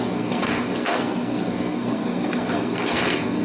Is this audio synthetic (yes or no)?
yes